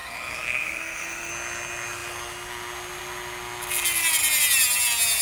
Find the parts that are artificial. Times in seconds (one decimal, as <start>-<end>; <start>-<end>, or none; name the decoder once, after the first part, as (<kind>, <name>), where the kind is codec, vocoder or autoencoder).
0.0-1.3 (codec, SNAC)